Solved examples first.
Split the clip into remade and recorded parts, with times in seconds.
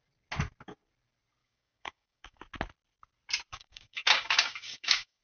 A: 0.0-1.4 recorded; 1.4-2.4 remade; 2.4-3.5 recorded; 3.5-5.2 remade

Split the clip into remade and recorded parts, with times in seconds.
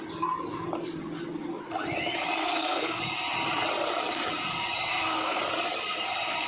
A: 0.0-2.4 recorded; 2.4-3.0 remade; 3.0-4.9 recorded; 4.9-5.4 remade; 5.4-6.5 recorded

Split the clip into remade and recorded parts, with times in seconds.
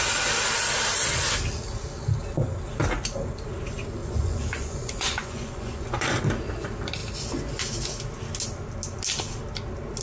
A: 0.0-4.0 recorded; 4.0-6.2 remade; 6.2-10.0 recorded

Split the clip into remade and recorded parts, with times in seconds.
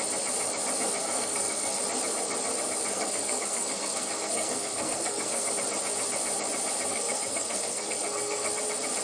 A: 0.0-1.0 recorded; 1.0-1.8 remade; 1.8-2.9 recorded; 2.9-5.5 remade; 5.5-6.9 recorded; 6.9-8.5 remade; 8.5-9.0 recorded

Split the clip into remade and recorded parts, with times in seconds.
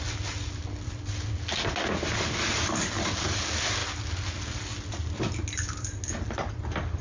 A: 0.0-7.0 recorded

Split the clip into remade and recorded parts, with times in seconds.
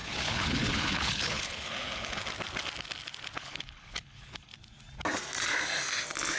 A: 0.0-2.2 remade; 2.2-3.4 recorded; 3.4-4.5 remade; 4.5-6.4 recorded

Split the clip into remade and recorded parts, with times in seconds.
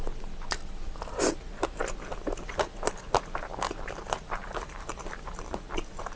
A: 0.0-6.2 recorded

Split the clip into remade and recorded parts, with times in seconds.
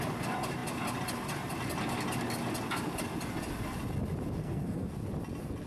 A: 0.0-4.4 recorded; 4.4-4.9 remade; 4.9-5.7 recorded